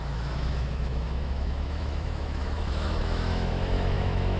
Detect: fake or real fake